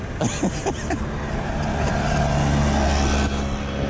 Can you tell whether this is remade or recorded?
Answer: recorded